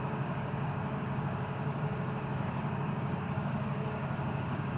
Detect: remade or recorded remade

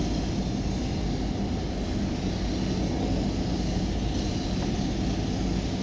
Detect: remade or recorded recorded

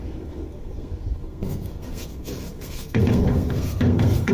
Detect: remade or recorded remade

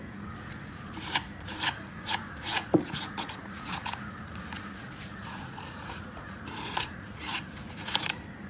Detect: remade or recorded remade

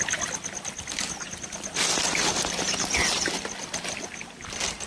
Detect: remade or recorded recorded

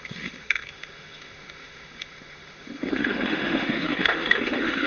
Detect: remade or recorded remade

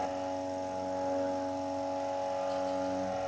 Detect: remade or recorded recorded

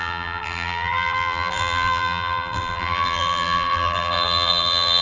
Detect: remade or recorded remade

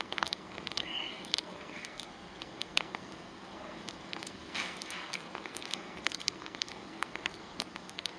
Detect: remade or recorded remade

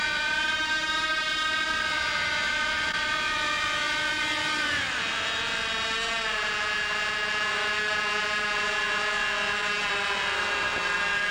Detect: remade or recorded remade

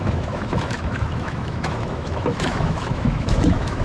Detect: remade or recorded remade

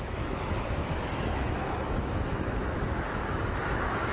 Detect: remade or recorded remade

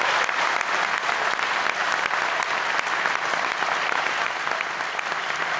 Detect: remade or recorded recorded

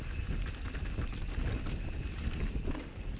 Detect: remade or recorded recorded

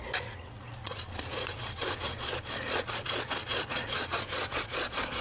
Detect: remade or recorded remade